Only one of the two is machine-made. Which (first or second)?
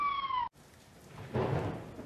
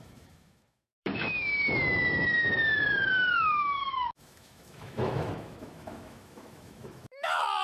second